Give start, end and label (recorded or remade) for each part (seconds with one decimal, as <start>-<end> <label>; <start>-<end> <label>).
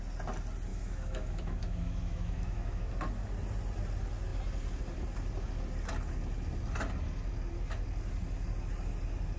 0.0-0.7 recorded; 0.7-2.9 remade; 2.9-9.4 recorded